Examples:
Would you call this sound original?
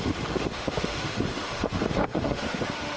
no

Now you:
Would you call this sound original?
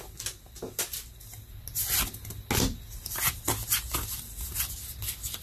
yes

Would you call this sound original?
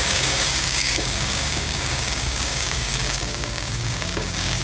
no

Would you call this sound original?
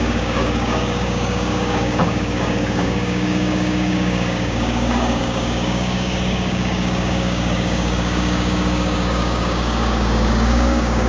no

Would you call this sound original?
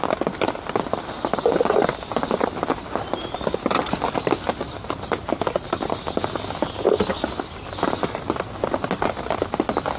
yes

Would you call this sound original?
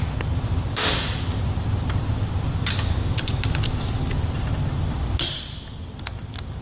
yes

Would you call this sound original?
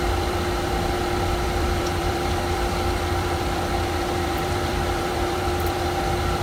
no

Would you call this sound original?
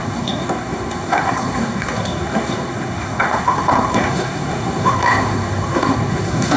no